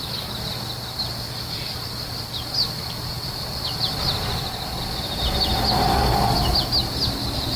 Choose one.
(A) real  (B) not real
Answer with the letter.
A